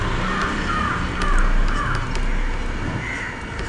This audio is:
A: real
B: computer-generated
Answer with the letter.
A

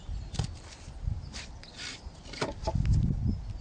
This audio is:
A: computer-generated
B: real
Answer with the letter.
B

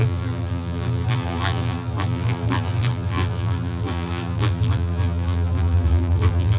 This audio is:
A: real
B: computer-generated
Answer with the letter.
B